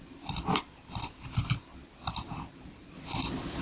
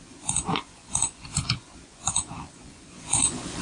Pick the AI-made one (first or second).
second